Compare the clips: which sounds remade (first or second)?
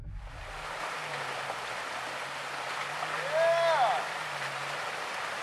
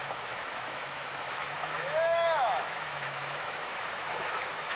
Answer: second